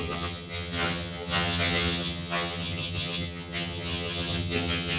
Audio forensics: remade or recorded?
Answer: remade